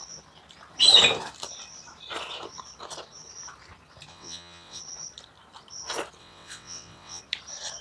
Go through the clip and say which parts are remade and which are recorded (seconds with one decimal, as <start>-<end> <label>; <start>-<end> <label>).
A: 0.0-4.1 recorded; 4.1-4.8 remade; 4.8-6.2 recorded; 6.2-7.2 remade; 7.2-7.8 recorded